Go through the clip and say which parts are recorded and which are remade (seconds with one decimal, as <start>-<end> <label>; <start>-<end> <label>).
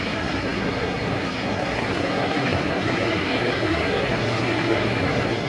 0.0-5.5 remade